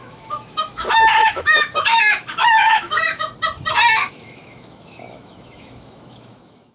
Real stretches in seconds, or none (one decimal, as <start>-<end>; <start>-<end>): 3.3-4.0